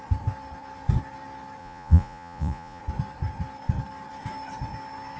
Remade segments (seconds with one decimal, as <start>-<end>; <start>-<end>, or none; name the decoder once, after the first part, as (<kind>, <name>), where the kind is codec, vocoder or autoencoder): 1.6-2.8 (vocoder, Vocos)